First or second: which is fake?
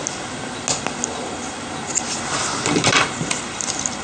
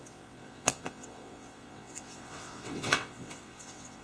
second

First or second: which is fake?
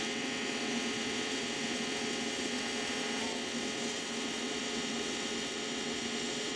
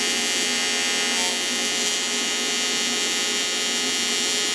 first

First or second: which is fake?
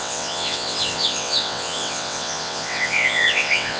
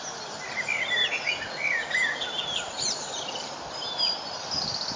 first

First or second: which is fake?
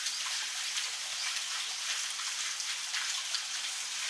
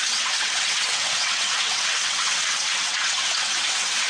second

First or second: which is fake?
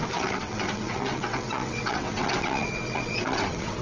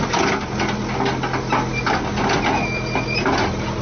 first